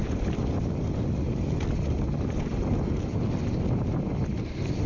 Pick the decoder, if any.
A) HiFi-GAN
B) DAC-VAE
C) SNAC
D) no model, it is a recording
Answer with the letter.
D